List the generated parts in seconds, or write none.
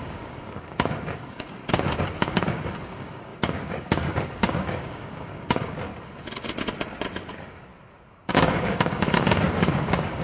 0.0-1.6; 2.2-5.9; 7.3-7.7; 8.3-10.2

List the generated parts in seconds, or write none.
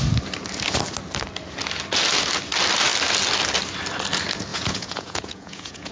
4.5-5.9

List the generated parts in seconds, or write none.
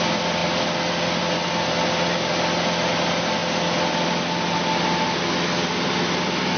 none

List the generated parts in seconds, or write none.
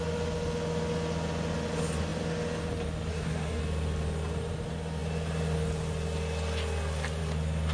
3.1-3.6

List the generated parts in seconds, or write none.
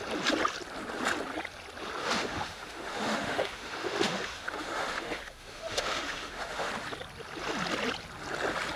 2.0-6.7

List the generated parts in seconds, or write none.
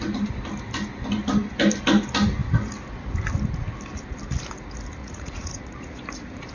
5.0-6.5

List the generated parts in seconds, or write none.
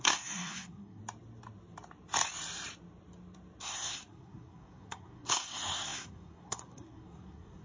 0.0-1.0; 3.6-7.6